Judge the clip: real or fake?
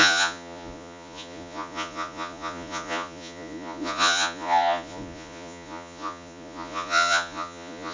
fake